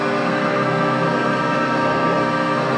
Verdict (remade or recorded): remade